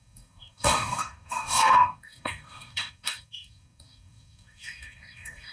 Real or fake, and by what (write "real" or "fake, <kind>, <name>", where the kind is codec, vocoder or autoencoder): fake, codec, DAC